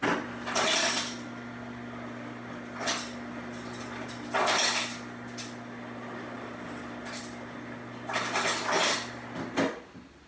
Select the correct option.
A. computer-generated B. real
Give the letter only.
B